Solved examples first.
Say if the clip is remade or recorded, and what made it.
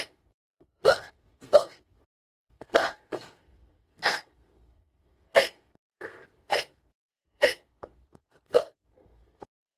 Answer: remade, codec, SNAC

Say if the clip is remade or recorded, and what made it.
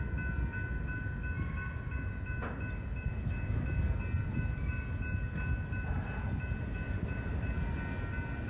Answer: recorded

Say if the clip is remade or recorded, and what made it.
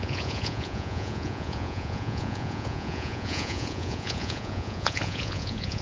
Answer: remade, vocoder, Vocos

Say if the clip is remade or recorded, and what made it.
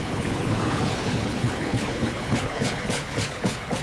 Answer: remade, codec, HILCodec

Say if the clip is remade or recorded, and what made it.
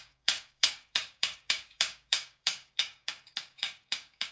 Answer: remade, codec, DAC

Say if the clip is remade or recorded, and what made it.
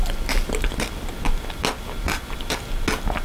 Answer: recorded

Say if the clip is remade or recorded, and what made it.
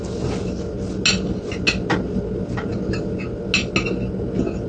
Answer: recorded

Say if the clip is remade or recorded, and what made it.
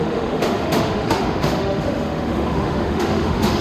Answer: remade, autoencoder, DAC-VAE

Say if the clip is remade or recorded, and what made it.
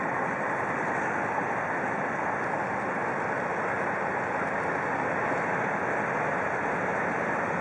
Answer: recorded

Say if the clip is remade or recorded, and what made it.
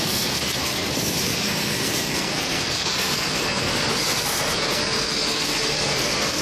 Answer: remade, codec, SNAC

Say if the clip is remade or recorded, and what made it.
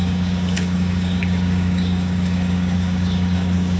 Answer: remade, codec, DAC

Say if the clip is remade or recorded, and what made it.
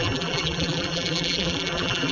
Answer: remade, vocoder, BigVGAN v2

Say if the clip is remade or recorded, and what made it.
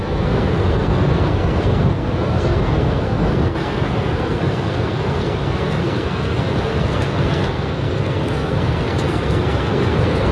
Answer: remade, codec, SNAC